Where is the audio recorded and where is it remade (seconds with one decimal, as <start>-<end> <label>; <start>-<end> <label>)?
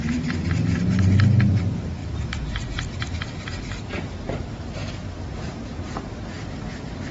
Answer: 0.0-2.0 remade; 2.0-3.1 recorded; 3.1-7.1 remade